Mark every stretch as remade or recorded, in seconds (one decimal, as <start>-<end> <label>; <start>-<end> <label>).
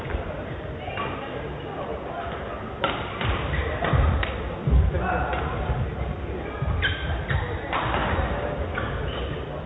0.0-9.7 recorded